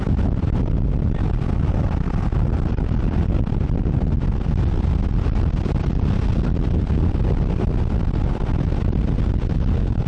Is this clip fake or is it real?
real